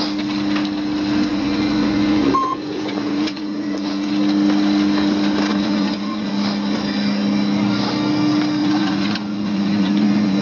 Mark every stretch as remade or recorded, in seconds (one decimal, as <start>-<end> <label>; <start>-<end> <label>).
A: 0.0-1.3 recorded; 1.3-4.1 remade; 4.1-5.5 recorded; 5.5-6.3 remade; 6.3-8.6 recorded; 8.6-10.4 remade

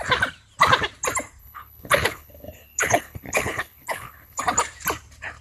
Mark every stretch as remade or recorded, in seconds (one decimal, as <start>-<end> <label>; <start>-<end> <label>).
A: 0.0-1.4 recorded; 1.4-4.4 remade; 4.4-5.4 recorded

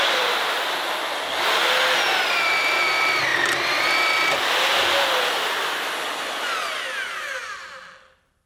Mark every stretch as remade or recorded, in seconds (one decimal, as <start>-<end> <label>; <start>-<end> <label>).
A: 0.0-8.5 recorded

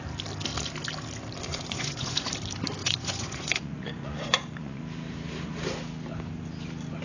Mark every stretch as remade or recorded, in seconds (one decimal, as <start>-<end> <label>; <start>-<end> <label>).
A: 0.0-1.5 recorded; 1.5-2.3 remade; 2.3-2.8 recorded; 2.8-4.8 remade; 4.8-7.0 recorded

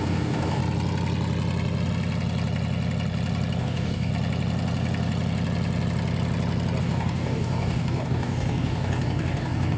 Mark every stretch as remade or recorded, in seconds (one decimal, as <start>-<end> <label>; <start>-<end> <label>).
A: 0.0-0.6 remade; 0.6-3.6 recorded; 3.6-4.1 remade; 4.1-6.8 recorded; 6.8-9.8 remade

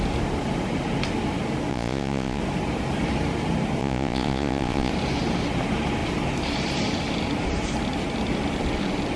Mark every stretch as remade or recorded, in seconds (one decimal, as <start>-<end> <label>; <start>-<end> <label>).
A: 0.0-1.7 recorded; 1.7-2.4 remade; 2.4-3.8 recorded; 3.8-4.9 remade; 4.9-9.2 recorded

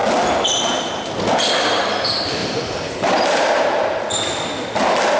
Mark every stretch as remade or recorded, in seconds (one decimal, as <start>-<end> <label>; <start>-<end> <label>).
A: 0.0-0.9 remade; 0.9-2.4 recorded; 2.4-3.5 remade; 3.5-5.2 recorded